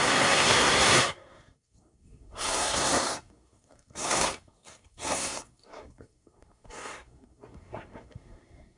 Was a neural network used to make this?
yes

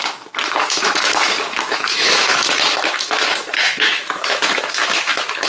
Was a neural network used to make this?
yes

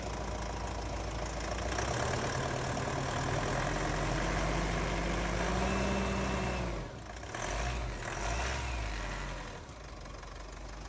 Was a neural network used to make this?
no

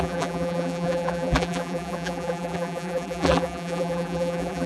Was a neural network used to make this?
yes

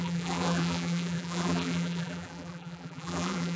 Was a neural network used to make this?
yes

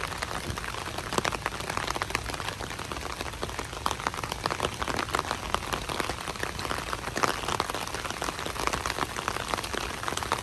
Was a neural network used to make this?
no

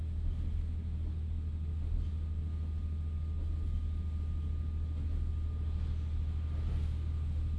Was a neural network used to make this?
no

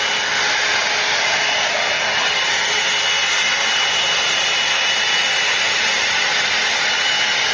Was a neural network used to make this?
no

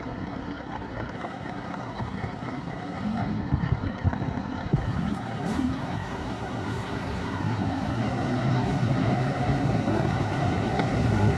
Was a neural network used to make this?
yes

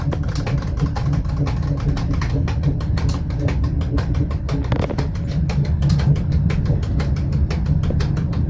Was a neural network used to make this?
no